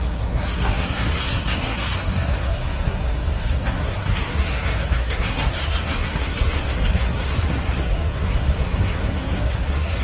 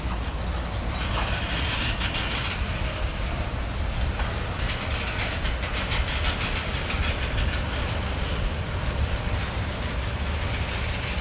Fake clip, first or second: first